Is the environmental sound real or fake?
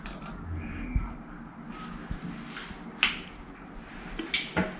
real